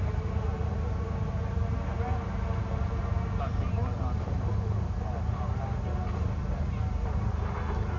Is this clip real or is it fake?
real